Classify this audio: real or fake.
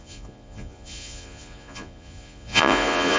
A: fake